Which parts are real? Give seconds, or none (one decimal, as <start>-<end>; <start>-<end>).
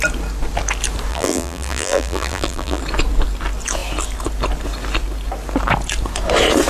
0.0-1.1; 2.8-6.7